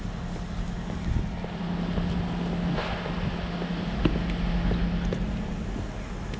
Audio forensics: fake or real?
real